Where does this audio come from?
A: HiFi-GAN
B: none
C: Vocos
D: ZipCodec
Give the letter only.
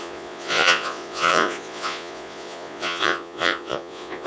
C